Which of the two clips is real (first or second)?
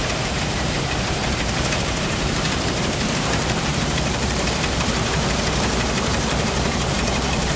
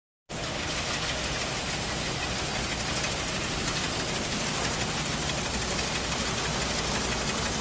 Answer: second